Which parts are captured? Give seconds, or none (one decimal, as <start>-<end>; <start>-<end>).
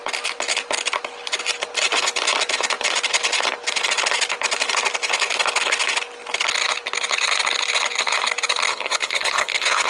0.0-8.7